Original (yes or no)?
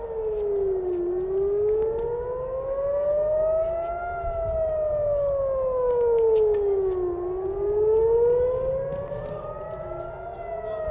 yes